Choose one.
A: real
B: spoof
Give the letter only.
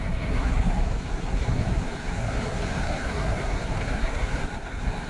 B